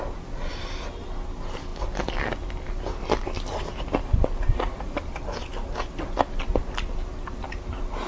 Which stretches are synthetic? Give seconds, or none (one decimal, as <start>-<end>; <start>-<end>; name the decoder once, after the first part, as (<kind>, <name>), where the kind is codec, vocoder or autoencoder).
none